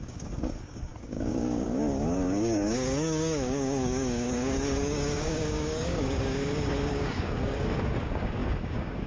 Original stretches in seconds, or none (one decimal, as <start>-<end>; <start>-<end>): none